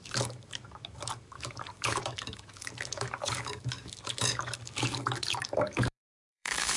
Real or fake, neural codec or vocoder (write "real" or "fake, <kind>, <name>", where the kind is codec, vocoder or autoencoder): fake, codec, DAC